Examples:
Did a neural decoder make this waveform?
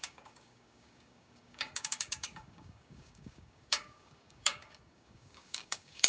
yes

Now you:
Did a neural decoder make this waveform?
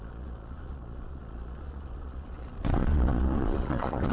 yes